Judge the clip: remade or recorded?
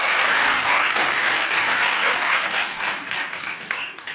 remade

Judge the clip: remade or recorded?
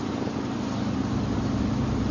recorded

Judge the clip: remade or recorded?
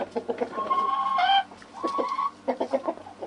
recorded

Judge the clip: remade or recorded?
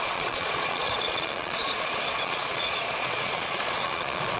remade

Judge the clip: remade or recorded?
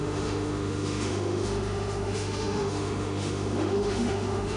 remade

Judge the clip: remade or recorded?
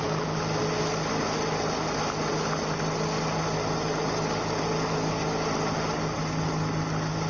recorded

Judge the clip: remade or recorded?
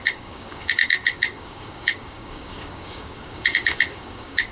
remade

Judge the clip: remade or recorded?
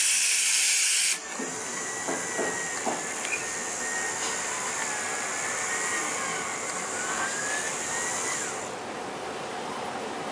recorded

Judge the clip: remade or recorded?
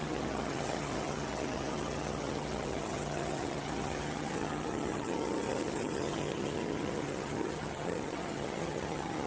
remade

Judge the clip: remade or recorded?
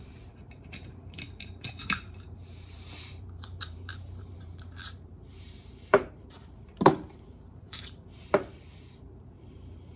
remade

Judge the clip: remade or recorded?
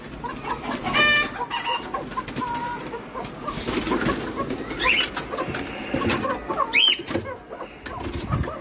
recorded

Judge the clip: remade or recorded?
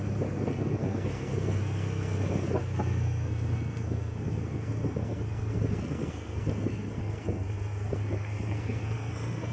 remade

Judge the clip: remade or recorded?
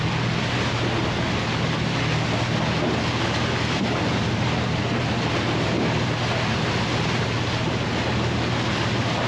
recorded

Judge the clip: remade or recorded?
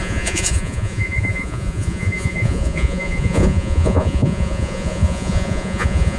remade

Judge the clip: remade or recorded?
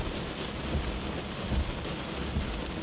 recorded